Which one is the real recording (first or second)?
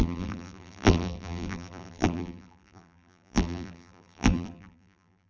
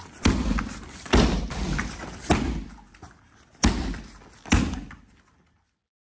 second